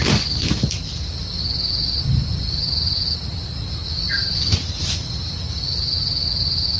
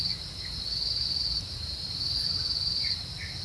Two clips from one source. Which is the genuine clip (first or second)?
first